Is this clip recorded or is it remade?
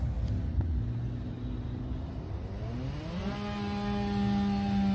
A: recorded